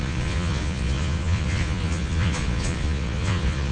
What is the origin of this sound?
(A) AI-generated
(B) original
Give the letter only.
A